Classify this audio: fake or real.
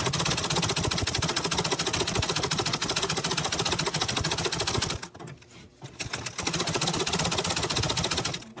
real